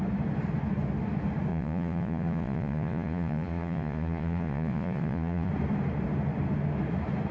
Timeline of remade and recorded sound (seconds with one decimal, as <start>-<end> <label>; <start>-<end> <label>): 0.0-1.5 recorded; 1.5-5.5 remade; 5.5-7.3 recorded